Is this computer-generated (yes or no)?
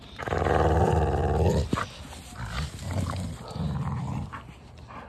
no